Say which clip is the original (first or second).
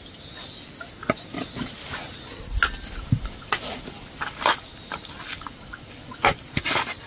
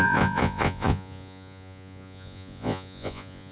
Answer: first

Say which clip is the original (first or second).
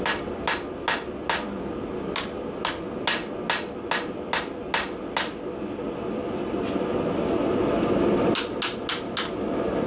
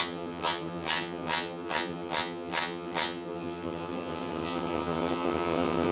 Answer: first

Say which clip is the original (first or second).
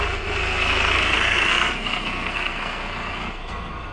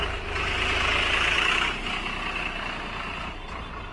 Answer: second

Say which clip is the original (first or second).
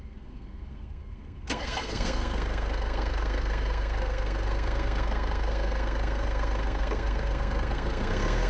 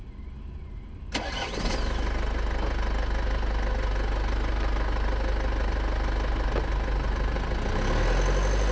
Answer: second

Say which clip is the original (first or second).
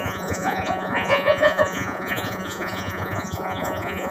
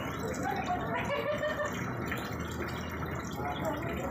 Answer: second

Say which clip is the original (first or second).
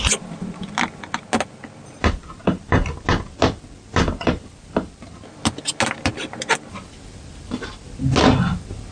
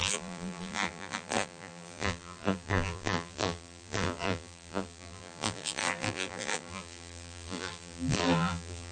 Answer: first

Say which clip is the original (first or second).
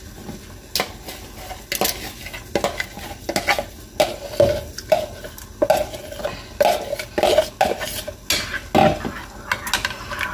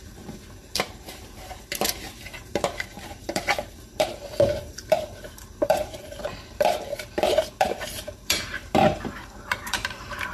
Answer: first